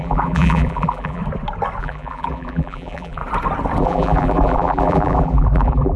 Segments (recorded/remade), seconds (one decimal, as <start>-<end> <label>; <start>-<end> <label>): 0.0-1.2 remade; 1.2-1.8 recorded; 1.8-3.2 remade; 3.2-3.8 recorded; 3.8-6.0 remade